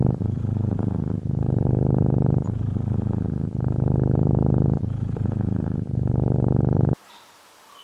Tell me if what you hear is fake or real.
fake